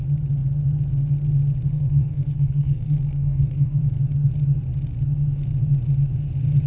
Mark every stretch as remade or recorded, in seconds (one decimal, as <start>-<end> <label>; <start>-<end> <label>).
0.0-1.7 recorded; 1.7-3.8 remade; 3.8-6.7 recorded